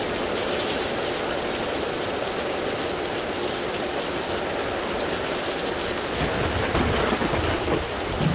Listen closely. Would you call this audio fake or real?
real